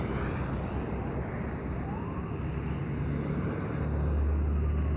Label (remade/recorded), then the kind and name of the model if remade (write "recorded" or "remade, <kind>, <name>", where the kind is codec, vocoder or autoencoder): recorded